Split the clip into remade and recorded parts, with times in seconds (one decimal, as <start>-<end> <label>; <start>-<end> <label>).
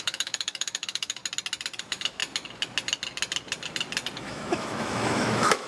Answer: 0.0-1.2 remade; 1.2-1.8 recorded; 1.8-2.2 remade; 2.2-4.2 recorded; 4.2-5.7 remade